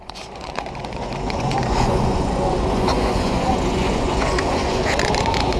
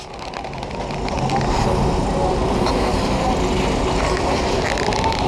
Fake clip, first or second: first